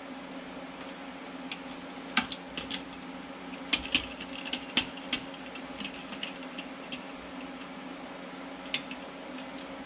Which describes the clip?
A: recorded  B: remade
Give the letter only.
A